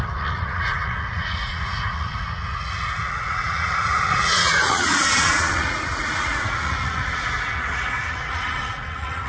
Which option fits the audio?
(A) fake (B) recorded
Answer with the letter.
A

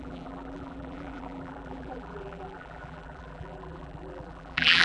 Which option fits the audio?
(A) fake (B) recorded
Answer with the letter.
A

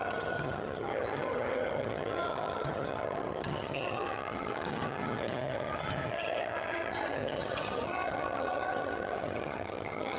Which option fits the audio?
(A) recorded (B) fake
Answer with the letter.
B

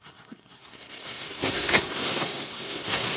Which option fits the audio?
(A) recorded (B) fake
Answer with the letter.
B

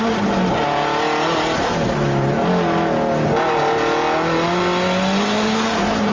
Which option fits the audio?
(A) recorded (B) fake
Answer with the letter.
A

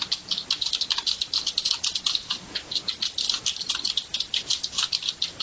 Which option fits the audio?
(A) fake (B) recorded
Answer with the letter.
B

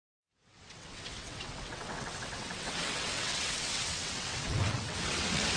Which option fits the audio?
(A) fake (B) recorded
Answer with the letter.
A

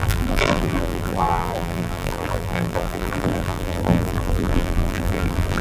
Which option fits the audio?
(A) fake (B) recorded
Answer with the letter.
A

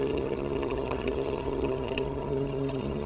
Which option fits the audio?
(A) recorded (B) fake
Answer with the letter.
B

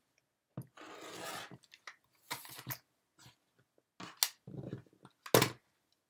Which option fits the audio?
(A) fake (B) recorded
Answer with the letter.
B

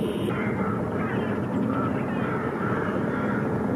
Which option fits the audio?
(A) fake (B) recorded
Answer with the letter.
A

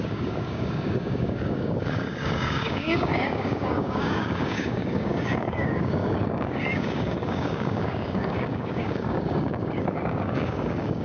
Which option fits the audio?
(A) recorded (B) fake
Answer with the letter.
B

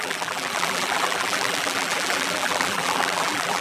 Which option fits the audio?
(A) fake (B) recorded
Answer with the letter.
A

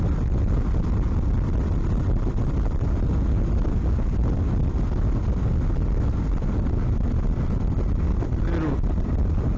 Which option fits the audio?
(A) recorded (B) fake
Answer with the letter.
A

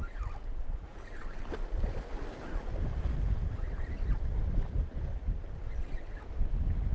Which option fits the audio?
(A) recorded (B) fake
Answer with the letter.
A